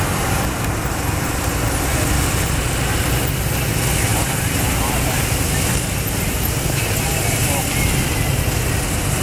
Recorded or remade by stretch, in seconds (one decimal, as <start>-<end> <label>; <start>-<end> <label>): 0.0-4.1 recorded; 4.1-5.5 remade; 5.5-9.2 recorded